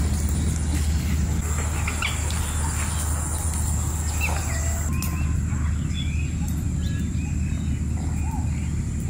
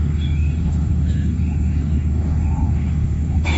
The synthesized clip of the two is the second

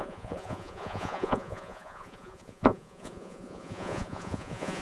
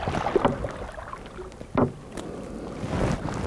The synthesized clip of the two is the first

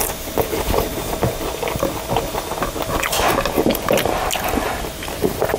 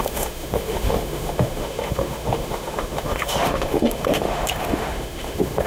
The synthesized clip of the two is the second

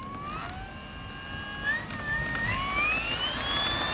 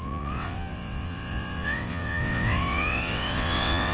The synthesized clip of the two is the second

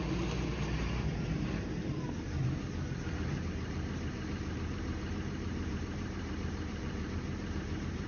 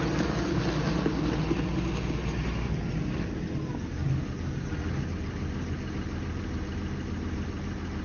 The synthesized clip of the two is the first